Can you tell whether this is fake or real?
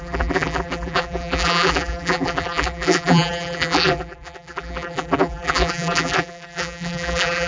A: fake